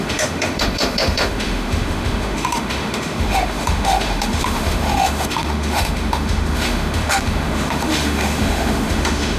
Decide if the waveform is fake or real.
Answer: fake